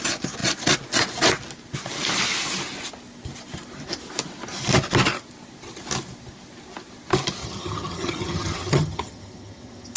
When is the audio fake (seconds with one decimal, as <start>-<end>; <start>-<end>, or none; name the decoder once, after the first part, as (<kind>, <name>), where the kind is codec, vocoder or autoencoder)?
7.4-10.0 (vocoder, HiFi-GAN)